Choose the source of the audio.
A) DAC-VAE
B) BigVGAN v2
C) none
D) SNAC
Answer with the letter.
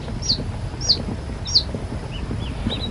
C